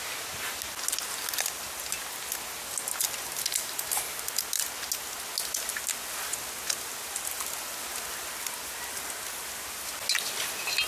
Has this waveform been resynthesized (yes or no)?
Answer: no